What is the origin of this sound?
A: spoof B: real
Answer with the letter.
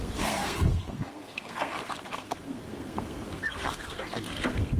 A